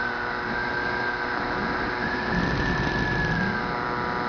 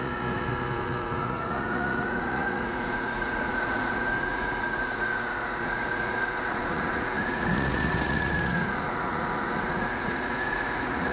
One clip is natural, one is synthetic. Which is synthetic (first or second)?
second